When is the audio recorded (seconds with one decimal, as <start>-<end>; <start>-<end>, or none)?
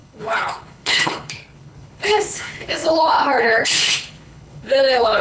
none